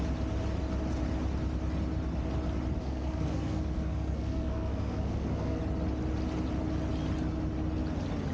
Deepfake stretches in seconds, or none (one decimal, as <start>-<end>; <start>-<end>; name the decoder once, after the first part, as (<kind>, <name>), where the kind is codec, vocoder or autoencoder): 2.8-5.6 (codec, SNAC)